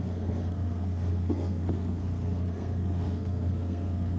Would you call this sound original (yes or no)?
no